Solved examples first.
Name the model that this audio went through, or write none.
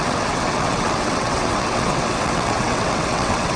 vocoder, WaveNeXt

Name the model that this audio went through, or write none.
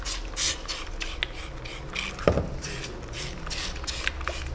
none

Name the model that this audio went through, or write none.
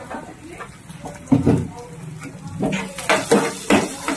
none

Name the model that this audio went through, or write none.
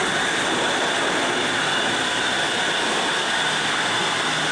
none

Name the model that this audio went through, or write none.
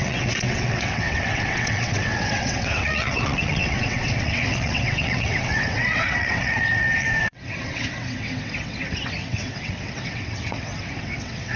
vocoder, WaveNeXt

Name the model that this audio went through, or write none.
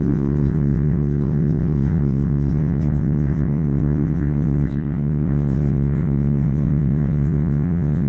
vocoder, WaveNeXt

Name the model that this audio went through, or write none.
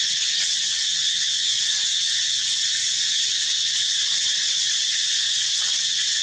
vocoder, WaveNeXt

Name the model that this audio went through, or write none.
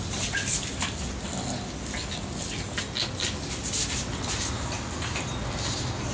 none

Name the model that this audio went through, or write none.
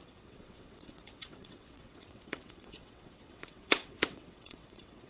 vocoder, WaveNeXt